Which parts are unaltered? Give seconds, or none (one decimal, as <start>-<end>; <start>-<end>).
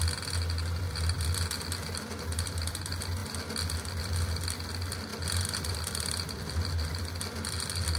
0.0-8.0